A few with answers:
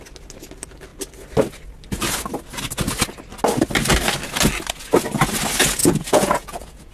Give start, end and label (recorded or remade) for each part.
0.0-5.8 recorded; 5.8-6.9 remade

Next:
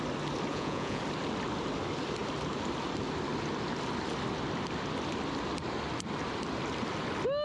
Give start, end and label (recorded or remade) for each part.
0.0-0.5 recorded; 0.5-1.0 remade; 1.0-7.4 recorded

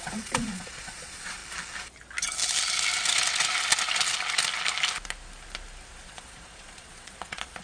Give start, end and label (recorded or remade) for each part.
0.0-1.4 remade; 1.4-6.0 recorded; 6.0-7.6 remade

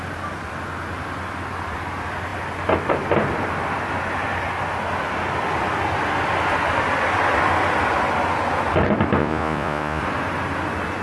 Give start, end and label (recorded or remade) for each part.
0.0-9.2 recorded; 9.2-10.0 remade; 10.0-11.0 recorded

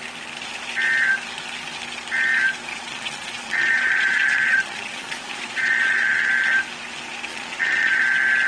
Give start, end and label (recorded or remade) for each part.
0.0-2.7 recorded; 2.7-6.3 remade; 6.3-7.3 recorded; 7.3-8.0 remade; 8.0-8.5 recorded

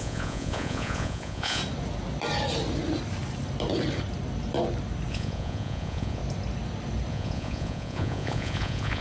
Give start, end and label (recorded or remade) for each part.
0.0-1.6 remade; 1.6-5.1 recorded; 5.1-6.2 remade; 6.2-7.1 recorded; 7.1-9.0 remade

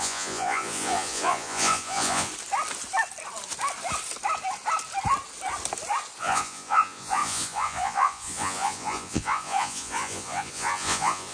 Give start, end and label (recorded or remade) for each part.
0.0-2.3 remade; 2.3-6.2 recorded; 6.2-11.3 remade